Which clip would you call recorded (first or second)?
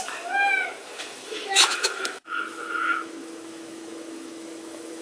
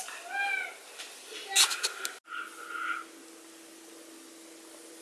second